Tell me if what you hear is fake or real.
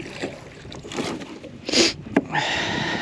real